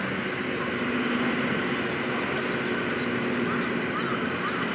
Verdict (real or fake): real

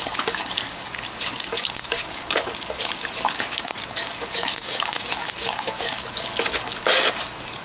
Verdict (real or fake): fake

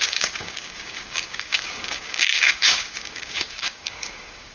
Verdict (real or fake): fake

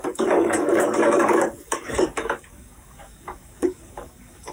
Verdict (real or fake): fake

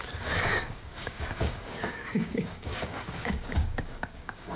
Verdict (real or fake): fake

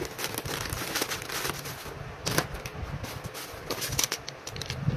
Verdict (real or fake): real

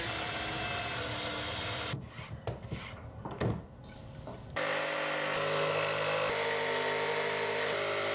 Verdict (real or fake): real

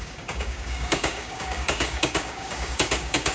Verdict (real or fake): fake